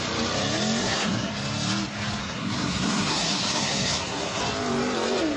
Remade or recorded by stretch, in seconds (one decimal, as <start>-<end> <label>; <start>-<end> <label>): 0.0-0.8 recorded; 0.8-1.3 remade; 1.3-2.2 recorded; 2.2-4.4 remade; 4.4-5.4 recorded